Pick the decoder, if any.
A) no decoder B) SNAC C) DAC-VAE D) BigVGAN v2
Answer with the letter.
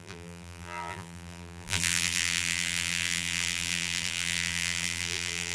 D